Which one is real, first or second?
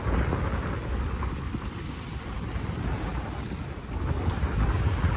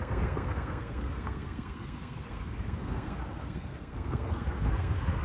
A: first